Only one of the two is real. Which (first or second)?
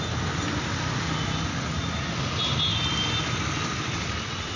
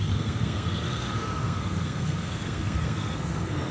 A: first